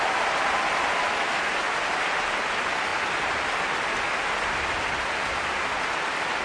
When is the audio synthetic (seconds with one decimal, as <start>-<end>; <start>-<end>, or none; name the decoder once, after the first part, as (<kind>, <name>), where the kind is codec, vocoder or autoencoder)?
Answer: none